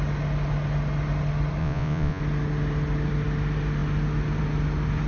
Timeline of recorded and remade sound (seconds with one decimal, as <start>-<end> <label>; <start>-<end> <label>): 0.0-1.6 recorded; 1.6-2.2 remade; 2.2-5.1 recorded